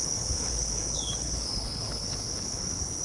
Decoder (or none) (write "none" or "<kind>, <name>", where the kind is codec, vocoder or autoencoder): codec, HILCodec